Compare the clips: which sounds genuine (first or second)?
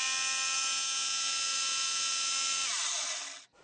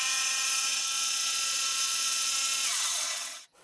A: first